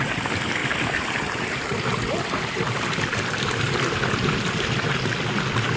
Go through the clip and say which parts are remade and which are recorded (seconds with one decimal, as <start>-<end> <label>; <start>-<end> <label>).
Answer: 0.0-5.8 recorded

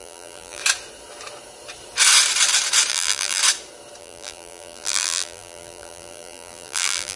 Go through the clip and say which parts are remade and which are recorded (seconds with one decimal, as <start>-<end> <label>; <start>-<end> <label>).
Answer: 0.0-0.6 remade; 0.6-2.9 recorded; 2.9-3.4 remade; 3.4-4.0 recorded; 4.0-7.2 remade

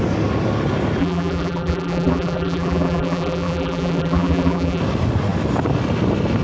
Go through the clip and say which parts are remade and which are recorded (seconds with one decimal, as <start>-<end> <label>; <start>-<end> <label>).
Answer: 0.0-1.0 recorded; 1.0-4.8 remade; 4.8-6.4 recorded

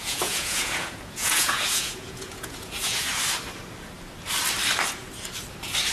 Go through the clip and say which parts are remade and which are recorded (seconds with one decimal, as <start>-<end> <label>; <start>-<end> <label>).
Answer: 0.0-3.1 remade; 3.1-5.9 recorded

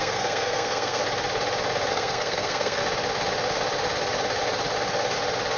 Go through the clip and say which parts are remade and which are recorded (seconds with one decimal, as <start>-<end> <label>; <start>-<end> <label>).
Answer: 0.0-1.0 remade; 1.0-1.9 recorded; 1.9-2.8 remade; 2.8-5.6 recorded

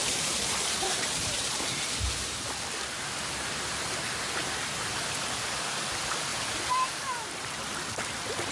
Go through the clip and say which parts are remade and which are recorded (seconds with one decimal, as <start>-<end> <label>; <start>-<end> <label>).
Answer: 0.0-1.1 remade; 1.1-6.3 recorded; 6.3-7.5 remade; 7.5-8.5 recorded

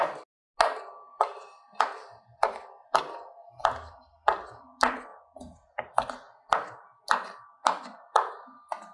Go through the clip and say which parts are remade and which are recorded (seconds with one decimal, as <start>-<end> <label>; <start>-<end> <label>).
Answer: 0.0-8.9 recorded